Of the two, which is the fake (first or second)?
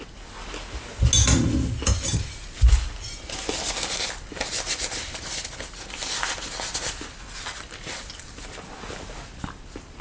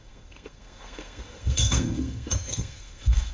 second